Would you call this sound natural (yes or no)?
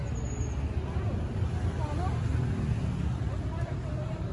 yes